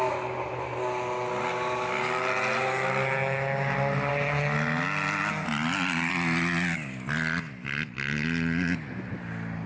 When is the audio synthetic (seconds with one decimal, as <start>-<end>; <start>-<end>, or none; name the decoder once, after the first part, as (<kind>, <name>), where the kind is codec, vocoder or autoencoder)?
none